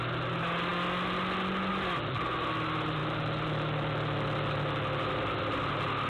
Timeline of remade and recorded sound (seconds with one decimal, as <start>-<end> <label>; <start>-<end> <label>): 0.0-6.1 recorded